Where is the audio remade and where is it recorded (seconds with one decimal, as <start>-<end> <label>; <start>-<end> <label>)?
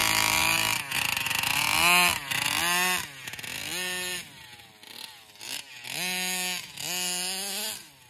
0.0-8.1 recorded